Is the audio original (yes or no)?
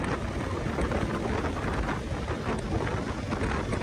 yes